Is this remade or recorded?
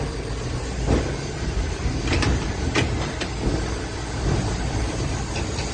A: recorded